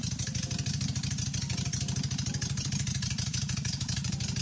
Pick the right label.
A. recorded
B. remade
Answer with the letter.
A